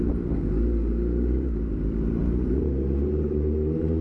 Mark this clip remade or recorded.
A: recorded